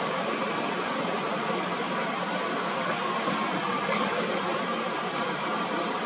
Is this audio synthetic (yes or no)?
no